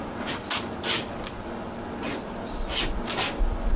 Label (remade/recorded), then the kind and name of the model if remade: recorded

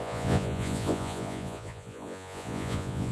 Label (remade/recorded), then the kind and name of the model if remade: remade, vocoder, Vocos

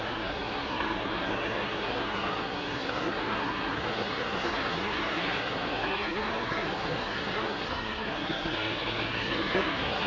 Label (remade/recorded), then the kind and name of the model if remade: remade, codec, SNAC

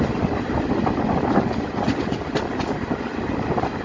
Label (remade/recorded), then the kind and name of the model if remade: recorded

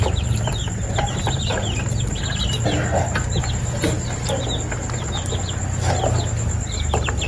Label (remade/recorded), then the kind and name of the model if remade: recorded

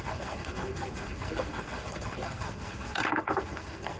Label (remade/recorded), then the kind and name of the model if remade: remade, codec, SNAC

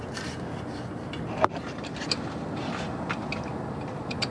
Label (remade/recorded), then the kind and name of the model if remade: recorded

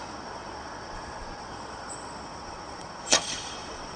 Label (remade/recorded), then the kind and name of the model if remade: remade, vocoder, Vocos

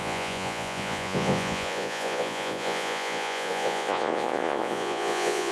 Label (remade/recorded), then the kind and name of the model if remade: remade, vocoder, Vocos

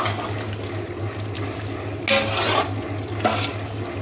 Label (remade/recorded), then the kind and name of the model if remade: recorded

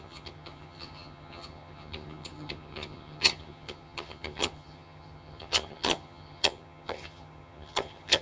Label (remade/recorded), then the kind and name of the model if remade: remade, vocoder, HiFi-GAN